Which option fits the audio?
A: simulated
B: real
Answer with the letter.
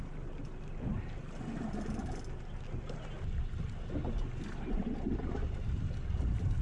B